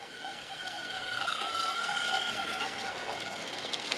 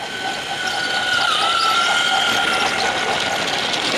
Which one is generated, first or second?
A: first